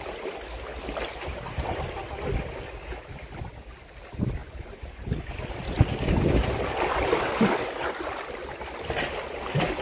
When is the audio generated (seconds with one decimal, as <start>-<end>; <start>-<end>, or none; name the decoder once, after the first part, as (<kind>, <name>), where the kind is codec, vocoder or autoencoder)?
none